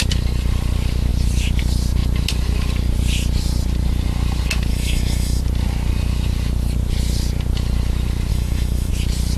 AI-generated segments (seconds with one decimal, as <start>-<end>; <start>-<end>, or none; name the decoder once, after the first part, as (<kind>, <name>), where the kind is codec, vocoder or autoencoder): 4.7-5.4 (autoencoder, DAC-VAE); 8.3-8.9